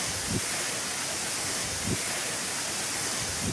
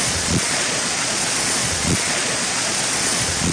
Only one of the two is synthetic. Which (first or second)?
second